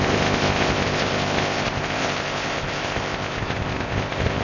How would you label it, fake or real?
fake